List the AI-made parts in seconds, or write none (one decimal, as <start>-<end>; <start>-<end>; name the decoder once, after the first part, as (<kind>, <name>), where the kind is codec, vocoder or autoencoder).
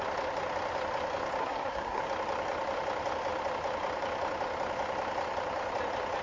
1.4-2.0 (codec, SNAC)